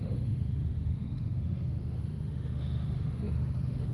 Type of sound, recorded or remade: remade